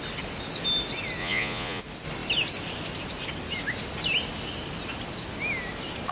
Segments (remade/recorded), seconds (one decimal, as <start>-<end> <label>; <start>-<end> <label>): 0.0-1.2 recorded; 1.2-1.8 remade; 1.8-6.1 recorded